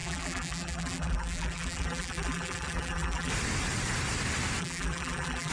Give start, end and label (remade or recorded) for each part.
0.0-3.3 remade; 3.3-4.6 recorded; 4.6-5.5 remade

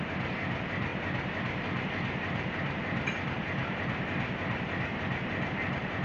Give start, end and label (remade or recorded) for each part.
0.0-0.9 remade; 0.9-1.8 recorded; 1.8-6.0 remade

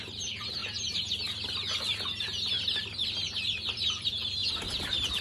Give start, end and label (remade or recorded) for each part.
0.0-0.6 remade; 0.6-3.7 recorded; 3.7-4.4 remade; 4.4-5.2 recorded

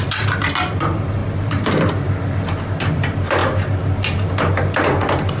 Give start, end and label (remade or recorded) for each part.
0.0-1.2 recorded; 1.2-1.9 remade; 1.9-5.4 recorded

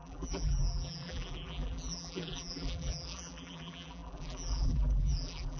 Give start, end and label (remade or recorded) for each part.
0.0-5.6 remade

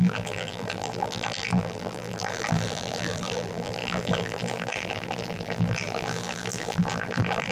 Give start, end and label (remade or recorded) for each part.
0.0-7.5 remade